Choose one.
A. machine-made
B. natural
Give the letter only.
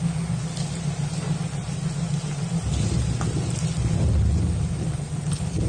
B